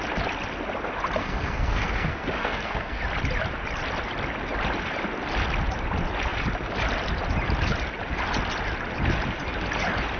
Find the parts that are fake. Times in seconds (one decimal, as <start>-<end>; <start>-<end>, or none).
1.2-3.0